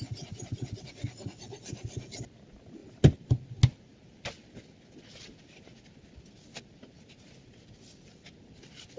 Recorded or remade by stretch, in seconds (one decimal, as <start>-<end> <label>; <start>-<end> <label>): 0.0-9.0 recorded